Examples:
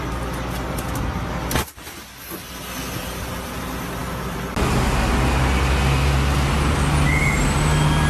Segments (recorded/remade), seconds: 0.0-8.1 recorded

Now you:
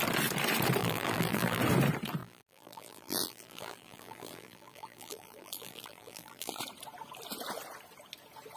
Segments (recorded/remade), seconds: 0.0-0.8 recorded; 0.8-1.6 remade; 1.6-2.2 recorded; 2.2-6.6 remade; 6.6-8.6 recorded

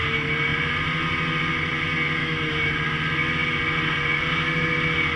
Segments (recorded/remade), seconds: 0.0-2.2 recorded; 2.2-2.7 remade; 2.7-5.2 recorded

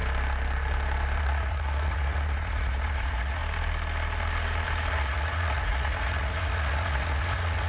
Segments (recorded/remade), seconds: 0.0-1.2 recorded; 1.2-3.4 remade; 3.4-4.9 recorded; 4.9-7.7 remade

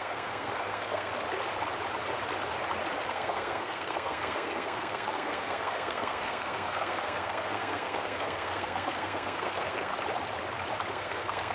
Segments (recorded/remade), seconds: 0.0-1.1 remade; 1.1-3.1 recorded; 3.1-9.9 remade; 9.9-10.9 recorded; 10.9-11.5 remade

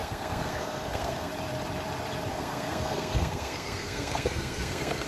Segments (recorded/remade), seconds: 0.0-1.3 remade; 1.3-2.3 recorded; 2.3-5.1 remade

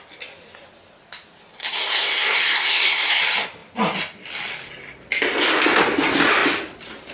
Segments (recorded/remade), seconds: 0.0-1.6 recorded; 1.6-3.2 remade; 3.2-7.1 recorded

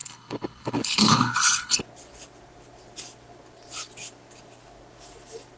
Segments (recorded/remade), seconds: 0.0-1.8 remade; 1.8-5.6 recorded